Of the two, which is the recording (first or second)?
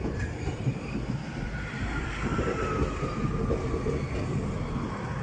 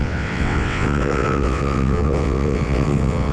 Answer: first